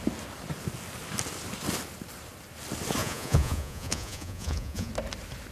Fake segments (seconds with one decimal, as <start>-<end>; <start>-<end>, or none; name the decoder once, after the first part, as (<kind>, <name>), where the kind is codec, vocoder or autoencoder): 3.0-4.9 (vocoder, Vocos)